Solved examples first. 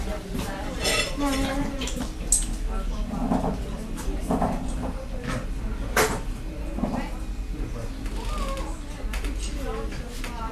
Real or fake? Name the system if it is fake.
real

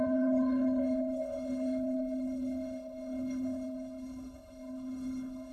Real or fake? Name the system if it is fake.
fake, codec, HILCodec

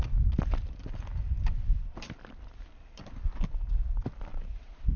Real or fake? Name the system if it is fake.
real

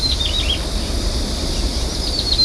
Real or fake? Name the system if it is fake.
real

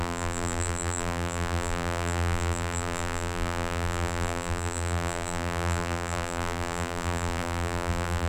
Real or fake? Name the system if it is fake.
fake, vocoder, BigVGAN v2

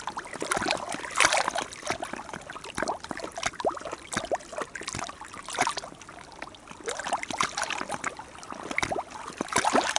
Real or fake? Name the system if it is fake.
real